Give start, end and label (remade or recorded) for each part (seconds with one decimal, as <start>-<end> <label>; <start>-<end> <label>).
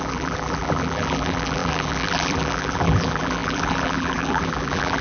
0.0-5.0 remade